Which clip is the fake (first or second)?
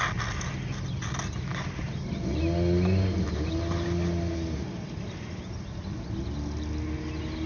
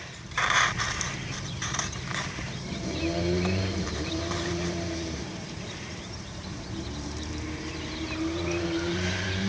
second